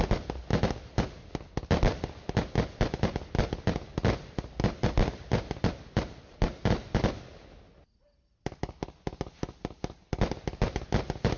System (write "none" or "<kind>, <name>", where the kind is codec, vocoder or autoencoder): none